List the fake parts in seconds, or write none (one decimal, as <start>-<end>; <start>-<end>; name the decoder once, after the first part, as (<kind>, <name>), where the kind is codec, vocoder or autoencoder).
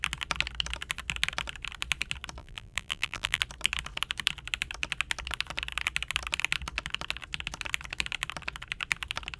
2.4-3.4 (vocoder, BigVGAN v2)